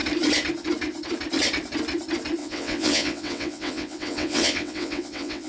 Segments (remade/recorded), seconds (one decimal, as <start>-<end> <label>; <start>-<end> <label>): 0.0-2.4 recorded; 2.4-5.5 remade